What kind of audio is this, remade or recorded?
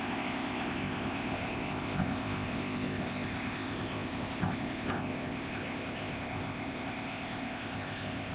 remade